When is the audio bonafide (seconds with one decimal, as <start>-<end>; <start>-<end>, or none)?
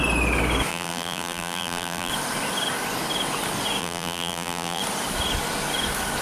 0.0-0.7; 2.1-3.8; 4.8-6.2